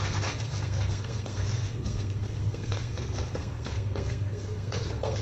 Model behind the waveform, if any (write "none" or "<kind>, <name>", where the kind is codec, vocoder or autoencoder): codec, SNAC